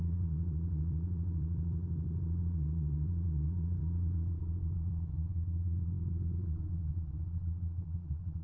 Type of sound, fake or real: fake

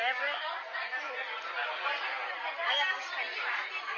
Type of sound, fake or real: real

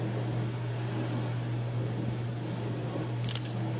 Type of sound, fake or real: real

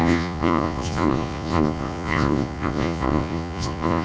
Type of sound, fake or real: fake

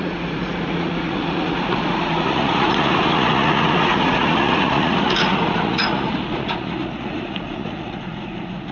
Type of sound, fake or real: fake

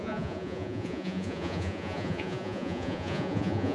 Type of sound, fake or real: fake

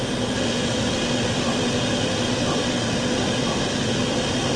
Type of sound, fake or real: real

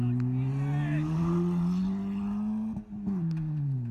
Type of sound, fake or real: real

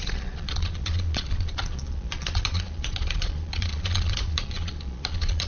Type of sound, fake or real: fake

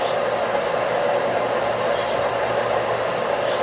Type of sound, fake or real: real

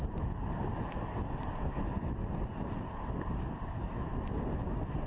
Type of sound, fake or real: real